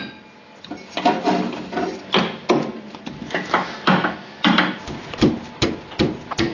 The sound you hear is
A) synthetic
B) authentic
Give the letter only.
B